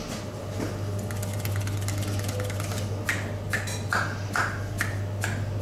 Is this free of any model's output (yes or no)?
yes